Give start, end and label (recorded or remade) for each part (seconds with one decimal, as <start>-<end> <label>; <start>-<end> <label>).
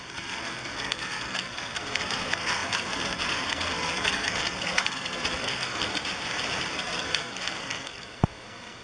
0.0-5.9 remade; 5.9-6.7 recorded; 6.7-8.8 remade